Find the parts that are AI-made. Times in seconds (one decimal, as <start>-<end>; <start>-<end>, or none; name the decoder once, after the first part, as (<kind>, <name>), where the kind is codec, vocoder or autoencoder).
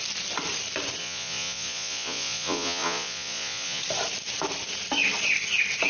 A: 1.0-3.8 (vocoder, Vocos)